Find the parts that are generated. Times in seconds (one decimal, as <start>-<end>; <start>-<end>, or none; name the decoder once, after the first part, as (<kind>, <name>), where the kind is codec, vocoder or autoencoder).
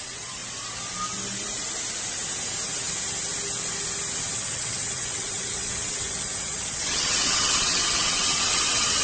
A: 0.0-0.4 (vocoder, WaveNeXt); 4.3-9.0